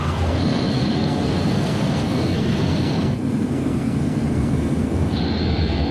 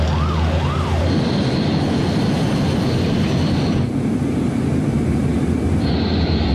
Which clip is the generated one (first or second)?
first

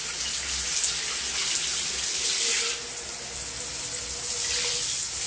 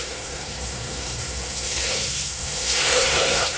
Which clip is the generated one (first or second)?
second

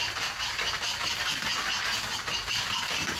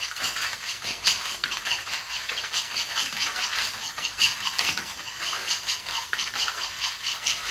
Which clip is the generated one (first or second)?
second